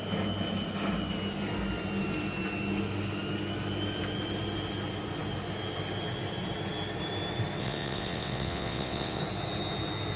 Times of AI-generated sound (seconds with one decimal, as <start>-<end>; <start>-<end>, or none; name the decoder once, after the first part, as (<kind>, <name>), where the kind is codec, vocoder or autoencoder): 7.6-9.2 (vocoder, WaveNeXt)